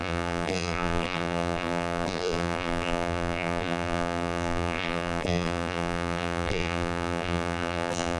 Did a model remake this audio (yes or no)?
yes